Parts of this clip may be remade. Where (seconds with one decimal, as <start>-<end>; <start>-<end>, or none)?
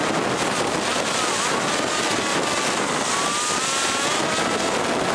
none